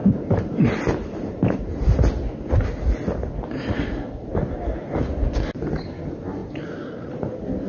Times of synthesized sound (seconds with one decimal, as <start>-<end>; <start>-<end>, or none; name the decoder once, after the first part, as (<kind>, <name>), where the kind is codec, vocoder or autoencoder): 0.0-2.0 (vocoder, BigVGAN v2); 6.4-7.3